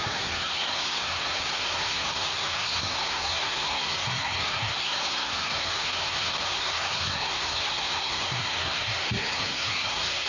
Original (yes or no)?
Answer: no